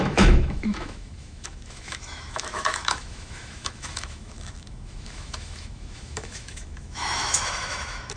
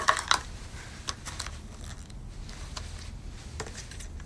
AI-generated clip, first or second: first